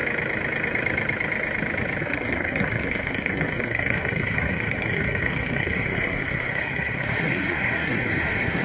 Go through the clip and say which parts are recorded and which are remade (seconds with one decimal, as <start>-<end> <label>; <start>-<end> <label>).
0.0-2.0 recorded; 2.0-8.6 remade